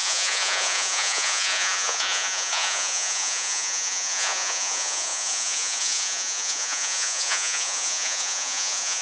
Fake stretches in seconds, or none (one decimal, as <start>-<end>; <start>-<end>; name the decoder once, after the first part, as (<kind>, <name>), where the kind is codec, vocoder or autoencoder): 0.0-9.0 (vocoder, Vocos)